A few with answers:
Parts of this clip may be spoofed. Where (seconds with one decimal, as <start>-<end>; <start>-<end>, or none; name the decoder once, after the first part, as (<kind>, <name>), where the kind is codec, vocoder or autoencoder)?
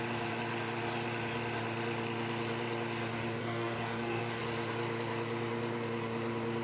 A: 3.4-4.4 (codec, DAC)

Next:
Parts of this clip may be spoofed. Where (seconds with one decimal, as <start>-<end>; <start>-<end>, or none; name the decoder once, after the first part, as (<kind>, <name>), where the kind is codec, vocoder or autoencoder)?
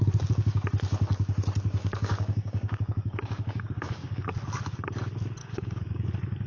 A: 1.8-4.3 (codec, DAC); 5.4-6.1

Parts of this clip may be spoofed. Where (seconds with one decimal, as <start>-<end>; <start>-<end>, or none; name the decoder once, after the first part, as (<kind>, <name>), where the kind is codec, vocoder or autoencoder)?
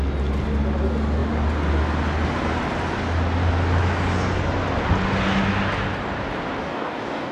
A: 6.6-7.3 (codec, DAC)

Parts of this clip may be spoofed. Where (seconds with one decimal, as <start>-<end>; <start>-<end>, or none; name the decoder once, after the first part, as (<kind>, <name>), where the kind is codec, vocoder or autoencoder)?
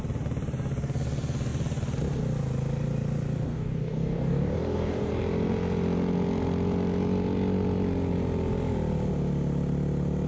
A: 3.5-5.1 (codec, DAC)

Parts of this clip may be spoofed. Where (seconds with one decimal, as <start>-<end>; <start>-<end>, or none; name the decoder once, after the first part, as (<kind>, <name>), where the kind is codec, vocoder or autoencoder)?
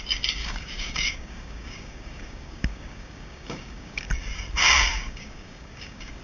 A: 0.4-4.1 (codec, DAC); 4.9-6.2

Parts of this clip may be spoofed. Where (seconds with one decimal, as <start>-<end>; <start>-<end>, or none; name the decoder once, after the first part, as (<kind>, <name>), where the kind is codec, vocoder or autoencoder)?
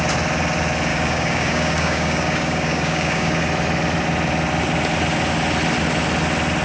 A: 0.9-3.4 (codec, DAC)